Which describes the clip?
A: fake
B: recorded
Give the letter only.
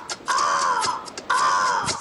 B